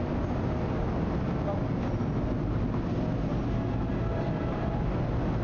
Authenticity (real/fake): real